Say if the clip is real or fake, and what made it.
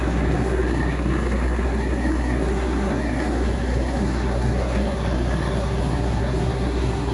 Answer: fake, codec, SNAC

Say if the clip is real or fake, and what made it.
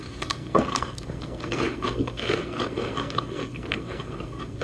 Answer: fake, codec, SNAC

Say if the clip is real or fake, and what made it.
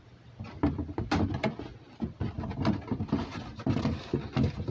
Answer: real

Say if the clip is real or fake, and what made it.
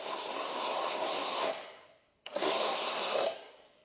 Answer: fake, codec, SNAC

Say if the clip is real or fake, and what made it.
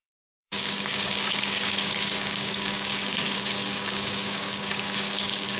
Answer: fake, codec, DAC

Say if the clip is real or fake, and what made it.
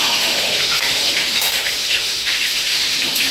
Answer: fake, autoencoder, DAC-VAE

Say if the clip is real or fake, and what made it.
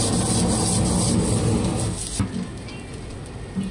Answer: real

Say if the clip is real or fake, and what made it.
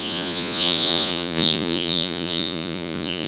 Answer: fake, vocoder, Vocos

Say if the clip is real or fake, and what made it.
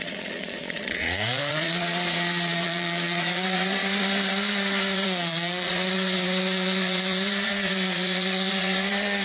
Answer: fake, vocoder, Vocos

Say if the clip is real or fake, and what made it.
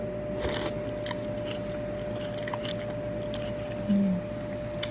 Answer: real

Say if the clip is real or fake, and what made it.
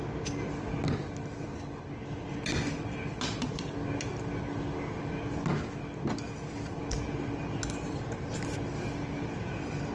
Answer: real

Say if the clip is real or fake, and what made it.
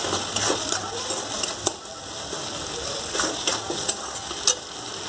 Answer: real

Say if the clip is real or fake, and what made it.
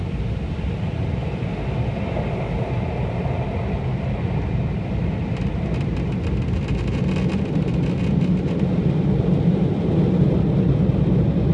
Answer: real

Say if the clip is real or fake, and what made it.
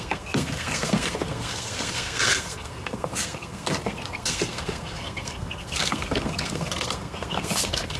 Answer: fake, codec, SNAC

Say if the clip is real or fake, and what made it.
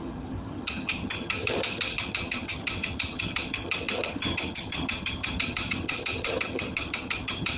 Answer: fake, vocoder, HiFi-GAN